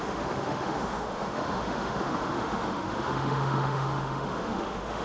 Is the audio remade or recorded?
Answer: remade